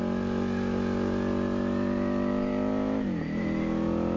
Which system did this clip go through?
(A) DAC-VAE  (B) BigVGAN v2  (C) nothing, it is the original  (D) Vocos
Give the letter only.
C